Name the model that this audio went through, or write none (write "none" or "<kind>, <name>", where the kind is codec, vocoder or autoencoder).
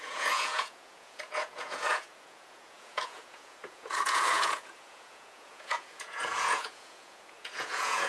vocoder, Vocos